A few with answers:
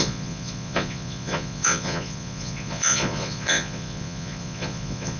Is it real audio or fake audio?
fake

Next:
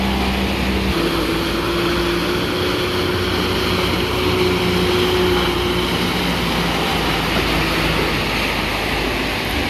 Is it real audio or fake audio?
real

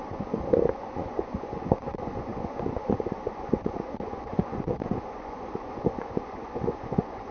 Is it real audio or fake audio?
fake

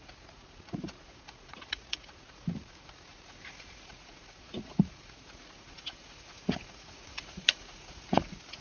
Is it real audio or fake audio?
fake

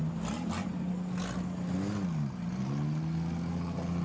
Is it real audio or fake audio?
real